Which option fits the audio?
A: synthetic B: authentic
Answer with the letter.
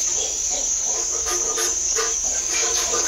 A